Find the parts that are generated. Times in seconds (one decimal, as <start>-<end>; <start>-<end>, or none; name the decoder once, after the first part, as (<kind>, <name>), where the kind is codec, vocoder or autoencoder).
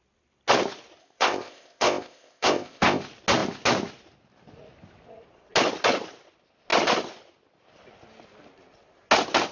1.0-3.0 (codec, ZipCodec)